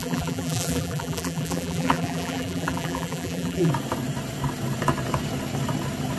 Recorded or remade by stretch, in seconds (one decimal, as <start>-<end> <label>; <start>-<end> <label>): 0.0-3.7 remade; 3.7-6.2 recorded